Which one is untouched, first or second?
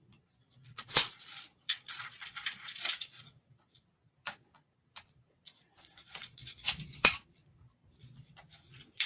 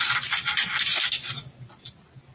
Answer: second